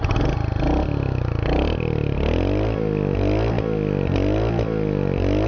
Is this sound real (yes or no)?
yes